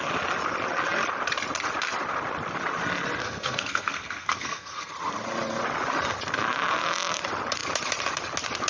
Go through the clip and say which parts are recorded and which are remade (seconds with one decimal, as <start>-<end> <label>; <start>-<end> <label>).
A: 0.0-3.2 recorded; 3.2-4.9 remade; 4.9-8.7 recorded